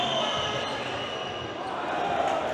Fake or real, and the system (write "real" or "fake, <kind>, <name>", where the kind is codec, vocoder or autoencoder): real